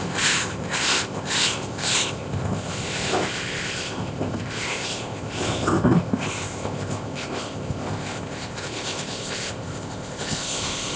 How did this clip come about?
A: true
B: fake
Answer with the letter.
B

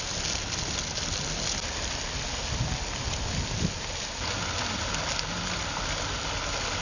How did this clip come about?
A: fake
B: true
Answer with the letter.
B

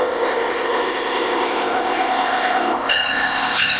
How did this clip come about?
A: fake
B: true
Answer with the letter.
A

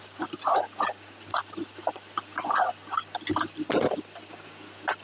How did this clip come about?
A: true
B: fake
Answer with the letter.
A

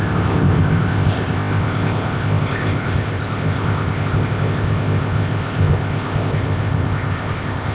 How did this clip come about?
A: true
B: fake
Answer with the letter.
B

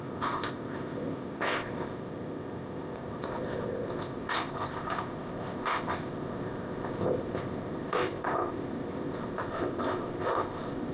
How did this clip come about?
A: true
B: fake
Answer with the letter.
B